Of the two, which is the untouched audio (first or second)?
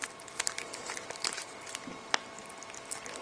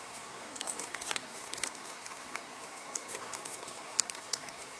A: first